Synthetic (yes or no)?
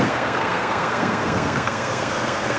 yes